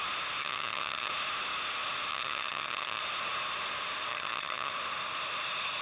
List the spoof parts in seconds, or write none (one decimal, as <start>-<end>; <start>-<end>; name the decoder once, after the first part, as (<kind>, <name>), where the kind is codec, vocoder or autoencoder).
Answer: 0.4-1.1 (vocoder, HiFi-GAN); 2.1-3.0; 4.1-4.7